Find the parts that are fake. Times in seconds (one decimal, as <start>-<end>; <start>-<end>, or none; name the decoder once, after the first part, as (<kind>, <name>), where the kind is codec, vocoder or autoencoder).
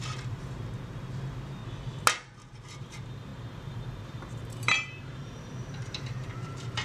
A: 0.0-1.6 (vocoder, BigVGAN v2); 2.8-6.8